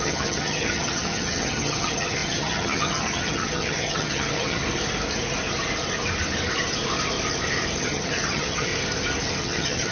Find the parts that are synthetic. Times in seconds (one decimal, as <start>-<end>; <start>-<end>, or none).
0.0-4.6; 7.8-8.7; 9.4-9.9